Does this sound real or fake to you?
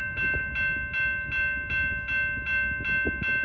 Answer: real